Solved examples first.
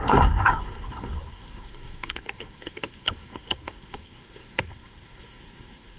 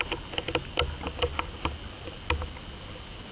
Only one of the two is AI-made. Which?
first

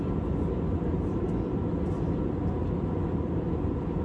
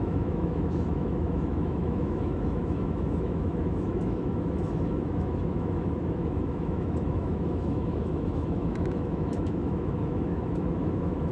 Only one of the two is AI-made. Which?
second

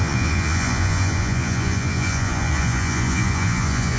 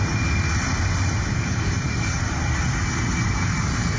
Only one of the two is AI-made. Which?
first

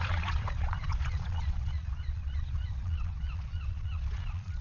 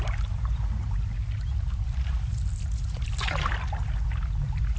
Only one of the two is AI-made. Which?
first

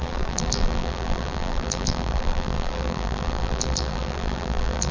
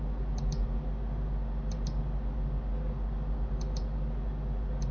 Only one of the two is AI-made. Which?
first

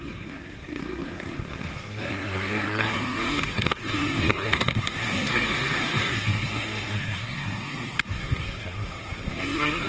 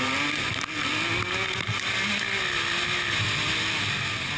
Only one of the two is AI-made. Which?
first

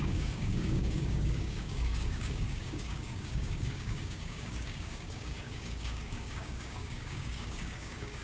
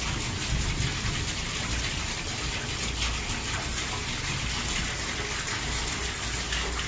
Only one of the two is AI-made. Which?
first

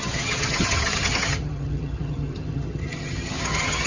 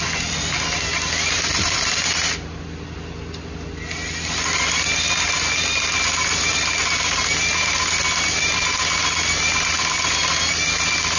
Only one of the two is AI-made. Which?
first